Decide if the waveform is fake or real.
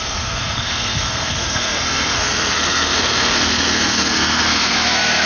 fake